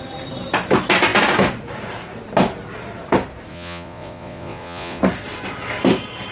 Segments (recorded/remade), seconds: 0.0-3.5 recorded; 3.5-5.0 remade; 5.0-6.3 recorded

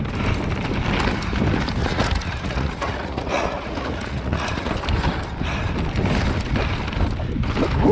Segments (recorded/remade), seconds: 0.0-1.8 recorded; 1.8-4.7 remade; 4.7-7.9 recorded

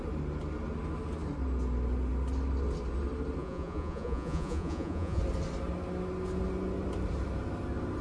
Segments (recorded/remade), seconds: 0.0-3.4 recorded; 3.4-5.2 remade; 5.2-8.0 recorded

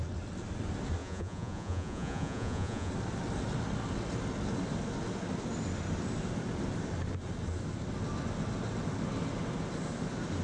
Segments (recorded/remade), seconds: 0.0-1.0 recorded; 1.0-2.9 remade; 2.9-10.4 recorded

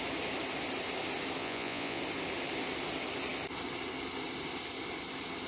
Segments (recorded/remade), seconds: 0.0-1.4 recorded; 1.4-2.0 remade; 2.0-5.5 recorded